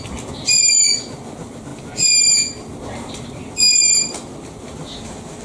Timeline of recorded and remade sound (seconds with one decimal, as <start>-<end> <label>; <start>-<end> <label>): 0.0-5.4 recorded